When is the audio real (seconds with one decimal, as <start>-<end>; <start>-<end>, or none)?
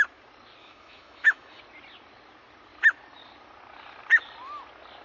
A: 0.0-0.6; 1.6-5.0